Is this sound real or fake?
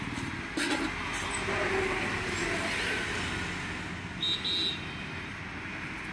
real